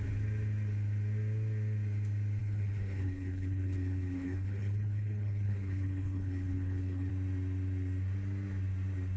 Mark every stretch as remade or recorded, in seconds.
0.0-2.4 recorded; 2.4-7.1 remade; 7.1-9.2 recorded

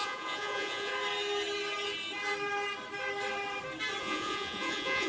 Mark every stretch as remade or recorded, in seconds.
0.0-0.9 remade; 0.9-4.0 recorded; 4.0-5.1 remade

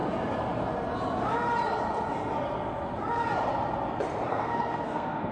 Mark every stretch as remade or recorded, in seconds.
0.0-4.3 recorded; 4.3-5.3 remade

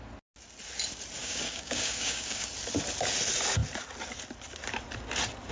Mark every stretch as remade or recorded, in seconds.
0.0-1.2 recorded; 1.2-2.5 remade; 2.5-5.5 recorded